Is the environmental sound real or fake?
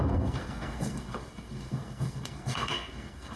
fake